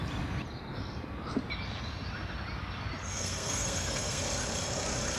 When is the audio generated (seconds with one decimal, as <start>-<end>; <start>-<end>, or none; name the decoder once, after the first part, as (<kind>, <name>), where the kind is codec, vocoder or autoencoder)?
3.0-4.2 (codec, SNAC)